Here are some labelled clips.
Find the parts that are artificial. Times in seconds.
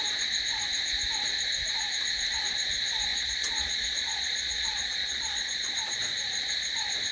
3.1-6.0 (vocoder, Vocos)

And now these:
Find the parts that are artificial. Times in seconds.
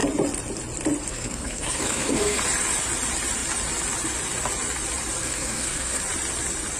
1.1-2.4 (codec, SNAC); 5.2-6.0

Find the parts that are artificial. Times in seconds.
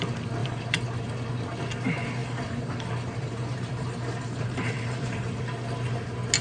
0.4-1.1 (vocoder, BigVGAN v2); 2.2-5.4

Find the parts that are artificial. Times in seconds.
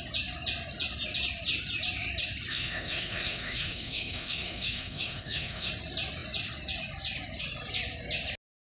2.5-5.7 (autoencoder, DAC-VAE)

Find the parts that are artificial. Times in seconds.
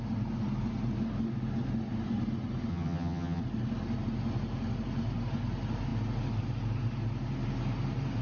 2.7-3.4 (vocoder, HiFi-GAN)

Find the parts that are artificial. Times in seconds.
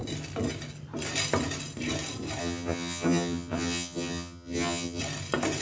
2.4-5.0 (vocoder, HiFi-GAN)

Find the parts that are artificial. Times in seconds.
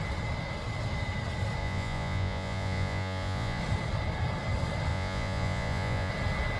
1.6-3.6 (vocoder, Vocos); 4.9-6.1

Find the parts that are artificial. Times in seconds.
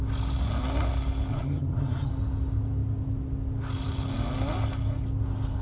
1.3-2.1 (vocoder, HiFi-GAN)